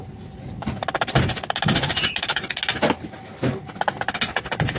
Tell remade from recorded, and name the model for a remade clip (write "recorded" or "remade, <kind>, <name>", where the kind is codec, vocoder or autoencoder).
recorded